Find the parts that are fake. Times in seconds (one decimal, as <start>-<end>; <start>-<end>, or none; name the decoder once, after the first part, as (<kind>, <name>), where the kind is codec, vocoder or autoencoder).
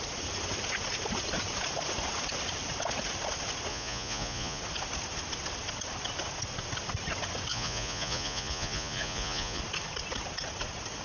3.7-4.6 (vocoder, Vocos); 7.5-9.6